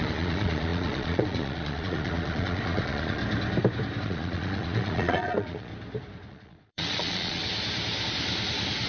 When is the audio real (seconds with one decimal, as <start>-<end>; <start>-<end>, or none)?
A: 3.2-4.0; 5.7-6.3; 7.4-8.9